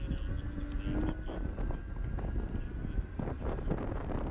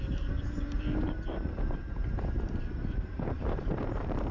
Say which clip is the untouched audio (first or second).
first